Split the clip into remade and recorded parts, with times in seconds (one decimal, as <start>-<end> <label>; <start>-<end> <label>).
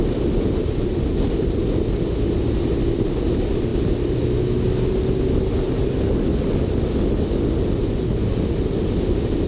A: 0.0-9.5 recorded